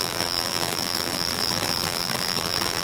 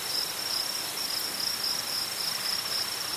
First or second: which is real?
second